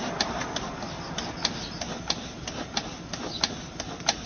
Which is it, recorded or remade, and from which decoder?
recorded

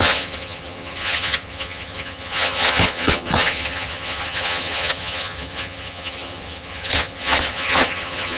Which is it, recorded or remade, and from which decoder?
remade, vocoder, HiFi-GAN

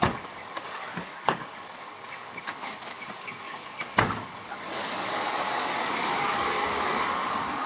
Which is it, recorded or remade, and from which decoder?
remade, codec, DAC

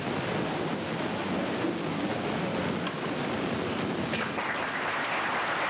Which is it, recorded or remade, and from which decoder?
recorded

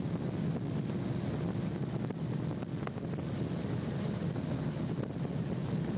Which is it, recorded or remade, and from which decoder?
recorded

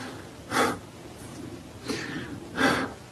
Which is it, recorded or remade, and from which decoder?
recorded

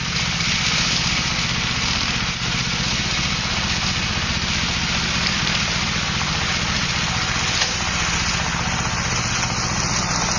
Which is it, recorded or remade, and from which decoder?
recorded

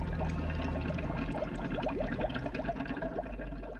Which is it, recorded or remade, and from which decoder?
recorded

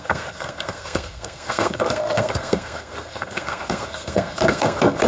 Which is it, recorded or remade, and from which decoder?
remade, codec, SNAC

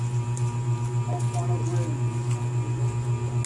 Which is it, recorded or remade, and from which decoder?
recorded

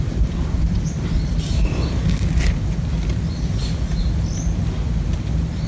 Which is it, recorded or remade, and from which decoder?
recorded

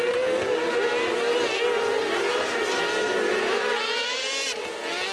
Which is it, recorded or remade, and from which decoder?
recorded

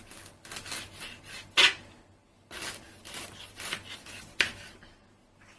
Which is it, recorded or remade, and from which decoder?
recorded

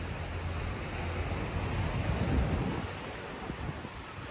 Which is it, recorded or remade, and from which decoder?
recorded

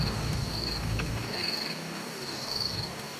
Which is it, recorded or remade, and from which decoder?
remade, codec, DAC